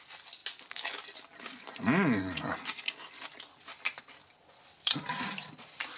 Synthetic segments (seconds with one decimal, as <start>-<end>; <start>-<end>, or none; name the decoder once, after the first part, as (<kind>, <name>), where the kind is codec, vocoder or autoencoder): none